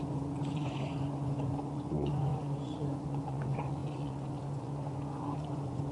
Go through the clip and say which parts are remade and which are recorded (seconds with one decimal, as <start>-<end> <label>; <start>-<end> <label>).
0.0-5.9 remade